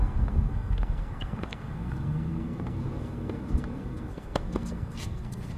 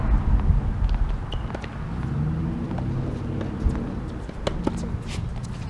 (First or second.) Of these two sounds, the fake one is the first